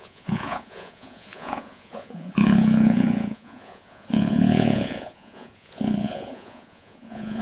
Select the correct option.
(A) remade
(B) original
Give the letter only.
A